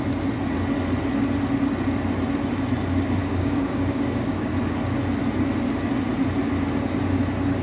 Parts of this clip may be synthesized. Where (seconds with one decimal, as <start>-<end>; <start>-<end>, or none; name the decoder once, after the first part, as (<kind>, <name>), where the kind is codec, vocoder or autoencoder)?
3.2-4.5 (codec, DAC)